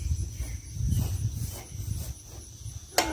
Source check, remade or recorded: recorded